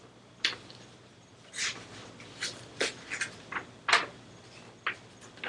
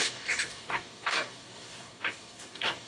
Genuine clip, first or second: first